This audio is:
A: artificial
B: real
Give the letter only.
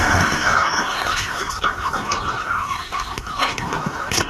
A